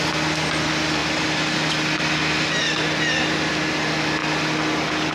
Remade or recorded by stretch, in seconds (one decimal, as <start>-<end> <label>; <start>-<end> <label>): 0.0-5.1 recorded